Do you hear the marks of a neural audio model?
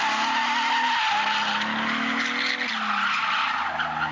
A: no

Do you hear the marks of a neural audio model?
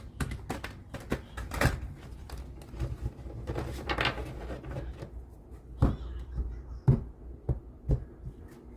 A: no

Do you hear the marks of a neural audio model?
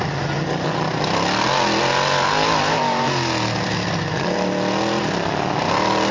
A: no